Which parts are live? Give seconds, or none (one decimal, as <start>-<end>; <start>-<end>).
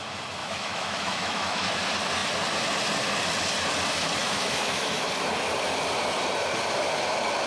0.0-0.4; 1.7-4.2; 5.1-7.5